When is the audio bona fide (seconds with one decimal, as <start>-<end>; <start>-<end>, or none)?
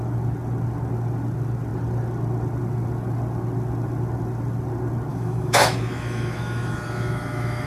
0.0-5.1